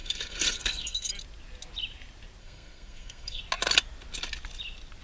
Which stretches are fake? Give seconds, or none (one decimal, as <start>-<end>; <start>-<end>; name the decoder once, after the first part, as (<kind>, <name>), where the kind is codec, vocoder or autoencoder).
0.0-1.1 (codec, SNAC); 2.4-3.4